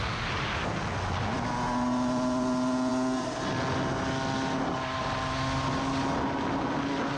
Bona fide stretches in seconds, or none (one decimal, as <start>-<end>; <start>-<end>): 0.0-7.2